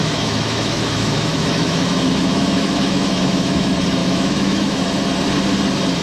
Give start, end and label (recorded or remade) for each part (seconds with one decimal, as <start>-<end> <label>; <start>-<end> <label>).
0.0-3.6 remade; 3.6-4.0 recorded; 4.0-5.0 remade; 5.0-6.0 recorded